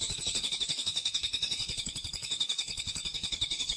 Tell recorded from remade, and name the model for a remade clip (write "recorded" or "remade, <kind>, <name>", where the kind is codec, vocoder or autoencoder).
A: remade, codec, DAC